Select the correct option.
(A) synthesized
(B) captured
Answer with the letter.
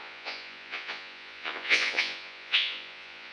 A